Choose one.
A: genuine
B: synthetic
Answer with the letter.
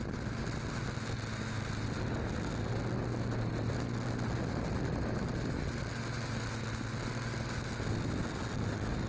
A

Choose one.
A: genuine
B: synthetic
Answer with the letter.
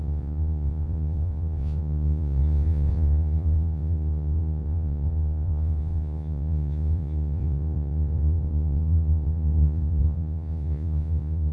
B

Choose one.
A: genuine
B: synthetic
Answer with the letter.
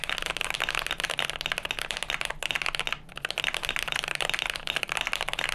A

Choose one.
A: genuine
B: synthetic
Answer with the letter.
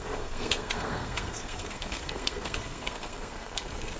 B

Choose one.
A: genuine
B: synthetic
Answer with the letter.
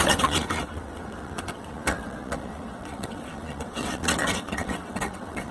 B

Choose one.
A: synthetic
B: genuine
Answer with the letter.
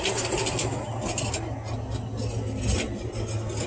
B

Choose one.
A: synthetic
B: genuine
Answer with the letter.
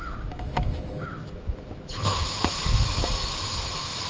A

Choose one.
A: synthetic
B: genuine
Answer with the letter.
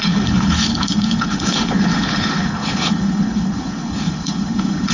A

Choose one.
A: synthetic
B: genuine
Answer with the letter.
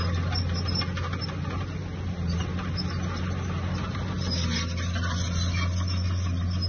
B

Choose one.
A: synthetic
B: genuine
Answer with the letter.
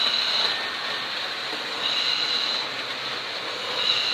B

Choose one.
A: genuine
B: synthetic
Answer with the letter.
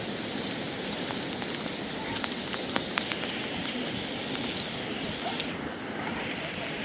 A